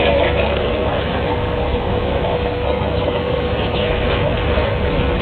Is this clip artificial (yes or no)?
yes